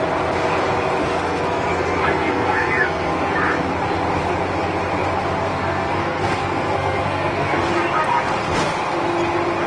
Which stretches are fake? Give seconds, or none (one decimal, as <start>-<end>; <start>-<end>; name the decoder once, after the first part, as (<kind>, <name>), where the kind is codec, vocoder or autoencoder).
1.0-3.3 (codec, SNAC); 5.5-7.6